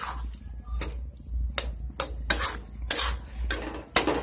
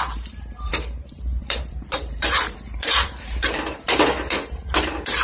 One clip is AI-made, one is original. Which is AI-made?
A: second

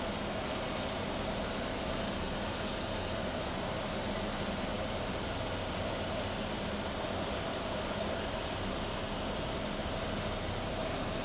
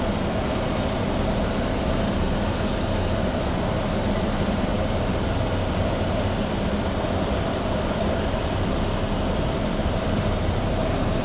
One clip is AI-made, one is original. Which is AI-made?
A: second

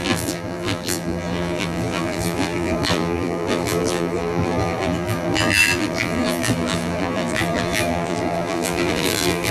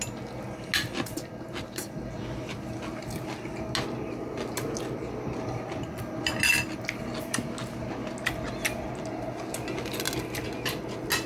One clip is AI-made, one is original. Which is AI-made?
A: first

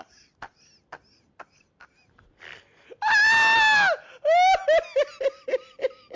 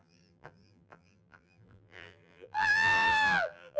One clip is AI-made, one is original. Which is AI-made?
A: second